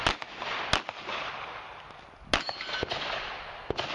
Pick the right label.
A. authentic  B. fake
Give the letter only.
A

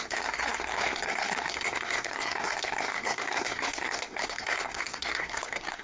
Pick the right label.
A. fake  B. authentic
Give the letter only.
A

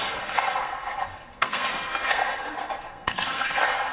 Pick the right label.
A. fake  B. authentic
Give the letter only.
A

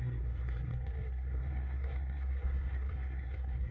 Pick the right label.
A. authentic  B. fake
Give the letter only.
B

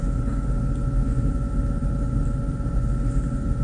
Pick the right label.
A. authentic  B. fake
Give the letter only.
A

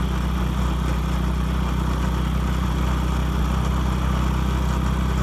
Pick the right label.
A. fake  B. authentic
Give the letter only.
B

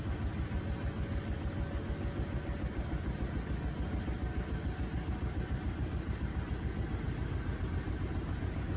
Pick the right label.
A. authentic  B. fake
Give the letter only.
A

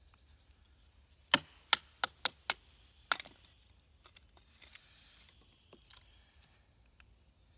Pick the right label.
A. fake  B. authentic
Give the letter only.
B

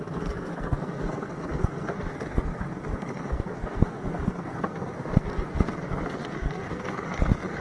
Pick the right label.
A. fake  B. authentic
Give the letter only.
A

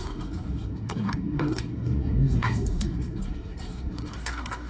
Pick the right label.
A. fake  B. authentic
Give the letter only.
A